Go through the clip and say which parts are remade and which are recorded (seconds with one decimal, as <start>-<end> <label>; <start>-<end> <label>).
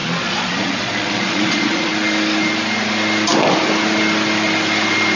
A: 0.0-1.9 remade; 1.9-5.2 recorded